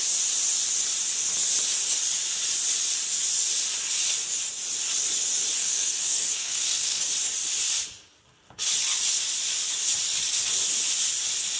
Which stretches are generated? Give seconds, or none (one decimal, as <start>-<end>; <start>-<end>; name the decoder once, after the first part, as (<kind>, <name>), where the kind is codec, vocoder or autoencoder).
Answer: 5.6-7.0 (codec, SNAC)